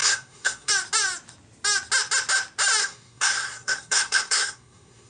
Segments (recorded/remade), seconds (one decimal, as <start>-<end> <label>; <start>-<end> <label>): 0.0-0.7 remade; 0.7-2.8 recorded; 2.8-5.1 remade